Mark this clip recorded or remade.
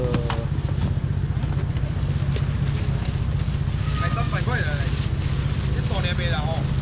recorded